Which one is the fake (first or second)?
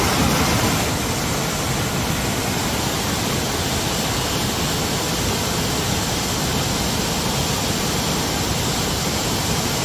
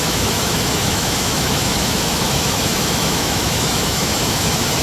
second